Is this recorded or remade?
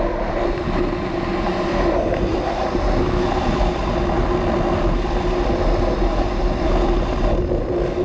recorded